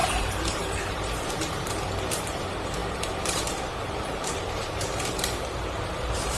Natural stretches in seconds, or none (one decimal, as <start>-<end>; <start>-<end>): none